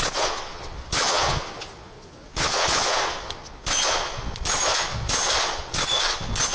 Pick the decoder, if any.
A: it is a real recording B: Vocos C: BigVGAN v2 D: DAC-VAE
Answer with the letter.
B